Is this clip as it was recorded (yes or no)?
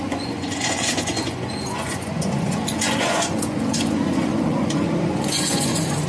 no